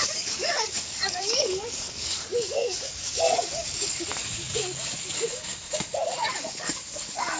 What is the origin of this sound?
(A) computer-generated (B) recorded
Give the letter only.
A